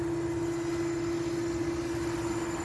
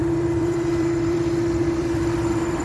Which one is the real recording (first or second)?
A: first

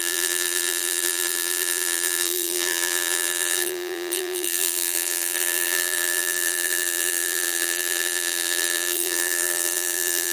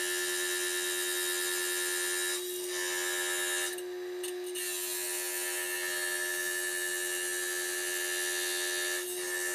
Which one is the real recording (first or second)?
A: second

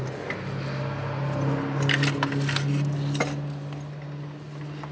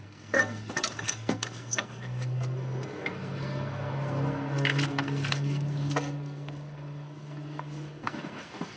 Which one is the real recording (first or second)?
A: first